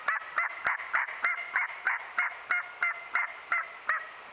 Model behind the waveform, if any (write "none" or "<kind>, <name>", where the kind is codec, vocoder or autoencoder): none